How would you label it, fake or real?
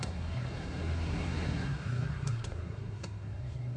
fake